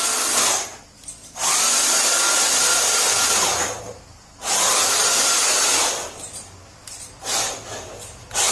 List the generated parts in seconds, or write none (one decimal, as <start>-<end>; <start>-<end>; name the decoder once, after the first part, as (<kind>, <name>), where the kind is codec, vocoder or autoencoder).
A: none